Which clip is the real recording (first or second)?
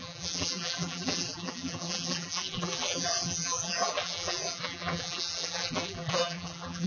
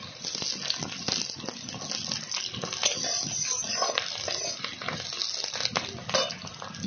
second